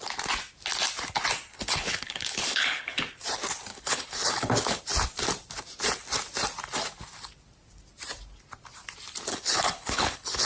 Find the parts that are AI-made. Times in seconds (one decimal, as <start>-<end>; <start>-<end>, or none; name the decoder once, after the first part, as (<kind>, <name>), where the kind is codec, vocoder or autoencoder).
1.5-3.0 (codec, HILCodec); 3.7-4.8; 9.3-10.5